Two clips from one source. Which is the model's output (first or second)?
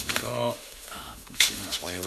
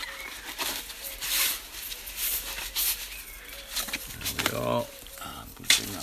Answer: first